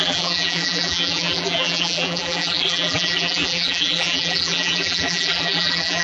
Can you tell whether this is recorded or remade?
remade